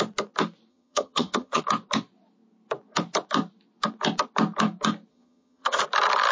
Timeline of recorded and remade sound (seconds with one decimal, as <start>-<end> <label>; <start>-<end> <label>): 0.0-0.7 recorded; 0.7-1.6 remade; 1.6-5.1 recorded; 5.1-5.8 remade; 5.8-6.3 recorded